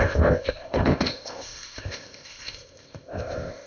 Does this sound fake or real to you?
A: fake